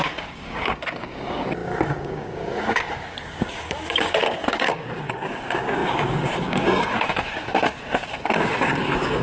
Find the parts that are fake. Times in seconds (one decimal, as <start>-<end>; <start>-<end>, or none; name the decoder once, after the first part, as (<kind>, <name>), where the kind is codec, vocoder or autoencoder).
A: 0.0-9.2 (codec, DAC)